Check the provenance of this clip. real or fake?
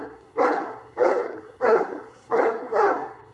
fake